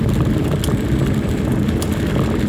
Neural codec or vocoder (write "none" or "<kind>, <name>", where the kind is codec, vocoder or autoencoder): none